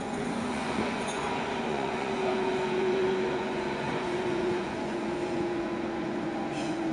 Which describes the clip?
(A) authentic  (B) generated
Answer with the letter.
B